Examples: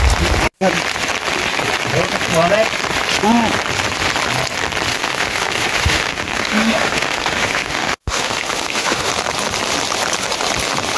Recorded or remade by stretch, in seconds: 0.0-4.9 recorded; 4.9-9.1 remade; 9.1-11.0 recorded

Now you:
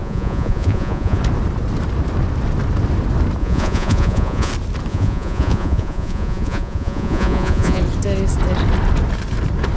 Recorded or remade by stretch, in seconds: 0.0-1.2 remade; 1.2-3.4 recorded; 3.4-4.5 remade; 4.5-4.9 recorded; 4.9-7.8 remade; 7.8-9.8 recorded